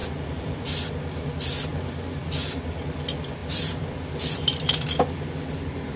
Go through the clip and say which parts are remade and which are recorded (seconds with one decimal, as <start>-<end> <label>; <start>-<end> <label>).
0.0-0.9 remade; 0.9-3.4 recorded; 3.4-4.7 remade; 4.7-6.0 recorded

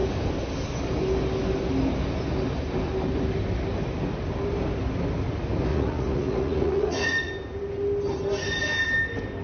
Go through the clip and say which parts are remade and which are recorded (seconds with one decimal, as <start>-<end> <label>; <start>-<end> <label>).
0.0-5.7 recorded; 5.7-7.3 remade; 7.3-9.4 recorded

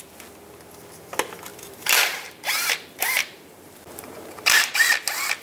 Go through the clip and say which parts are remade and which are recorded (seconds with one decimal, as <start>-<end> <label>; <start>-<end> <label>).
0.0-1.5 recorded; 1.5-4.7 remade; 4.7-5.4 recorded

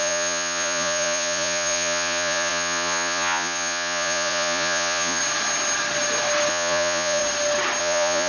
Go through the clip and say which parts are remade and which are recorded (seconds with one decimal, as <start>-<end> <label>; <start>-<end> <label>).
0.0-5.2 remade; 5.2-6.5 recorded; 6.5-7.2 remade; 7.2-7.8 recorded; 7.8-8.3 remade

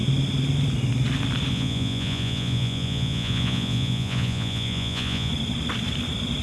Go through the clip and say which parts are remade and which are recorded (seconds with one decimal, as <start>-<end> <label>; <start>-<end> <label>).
0.0-1.5 recorded; 1.5-5.3 remade; 5.3-6.4 recorded